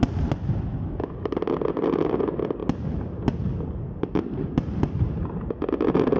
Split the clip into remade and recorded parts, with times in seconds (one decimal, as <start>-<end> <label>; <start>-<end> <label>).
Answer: 0.0-2.6 recorded; 2.6-5.5 remade; 5.5-6.2 recorded